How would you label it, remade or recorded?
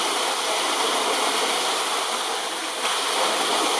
recorded